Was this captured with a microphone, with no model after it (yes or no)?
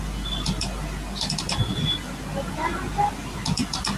yes